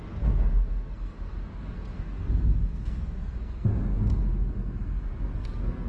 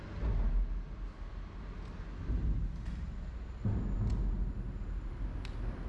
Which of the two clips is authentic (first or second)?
second